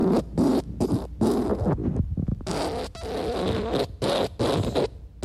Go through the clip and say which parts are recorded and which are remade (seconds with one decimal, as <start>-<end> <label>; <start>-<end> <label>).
0.0-0.6 remade; 0.6-5.2 recorded